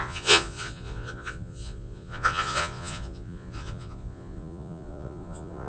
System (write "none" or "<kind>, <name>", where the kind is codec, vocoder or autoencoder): vocoder, Vocos